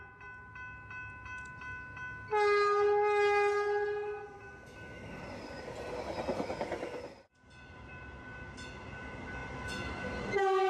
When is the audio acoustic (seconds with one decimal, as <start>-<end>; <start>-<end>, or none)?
0.0-10.7

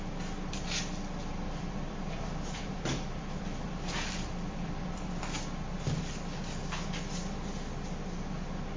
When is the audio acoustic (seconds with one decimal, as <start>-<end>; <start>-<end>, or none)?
0.0-1.2; 5.2-8.8